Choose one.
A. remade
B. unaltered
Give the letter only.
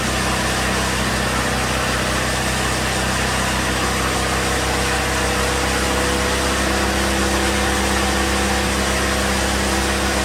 B